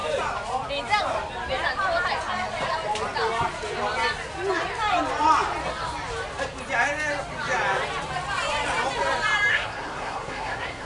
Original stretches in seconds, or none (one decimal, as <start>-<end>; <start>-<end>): 0.0-9.5

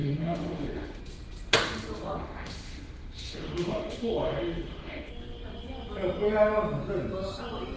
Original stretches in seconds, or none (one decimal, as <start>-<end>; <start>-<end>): 1.0-2.2; 5.1-7.8

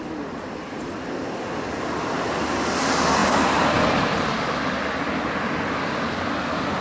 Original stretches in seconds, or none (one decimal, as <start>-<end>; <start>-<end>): 0.0-6.8

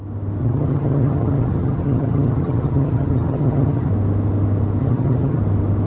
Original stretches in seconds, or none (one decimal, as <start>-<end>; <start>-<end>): 0.0-0.4; 3.9-4.8; 5.4-5.9

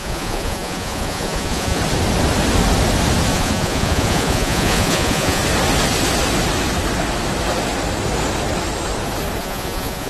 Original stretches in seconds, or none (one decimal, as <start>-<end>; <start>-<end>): 1.8-3.3; 5.4-9.4